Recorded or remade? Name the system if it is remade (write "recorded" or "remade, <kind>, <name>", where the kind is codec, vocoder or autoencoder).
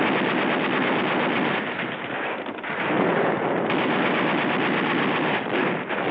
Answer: recorded